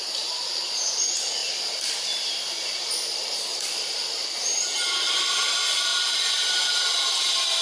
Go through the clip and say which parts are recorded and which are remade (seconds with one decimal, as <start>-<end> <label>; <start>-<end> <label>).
0.0-1.4 recorded; 1.4-5.1 remade; 5.1-5.9 recorded; 5.9-6.5 remade; 6.5-7.6 recorded